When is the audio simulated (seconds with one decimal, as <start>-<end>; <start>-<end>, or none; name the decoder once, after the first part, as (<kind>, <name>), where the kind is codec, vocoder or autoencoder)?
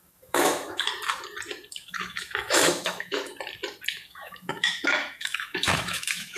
0.0-0.9 (autoencoder, DAC-VAE); 1.7-3.3; 3.9-6.4